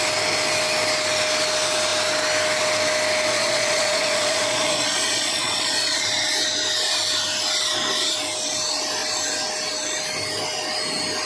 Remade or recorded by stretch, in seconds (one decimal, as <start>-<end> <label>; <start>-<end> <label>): 0.0-3.3 recorded; 3.3-6.0 remade; 6.0-11.3 recorded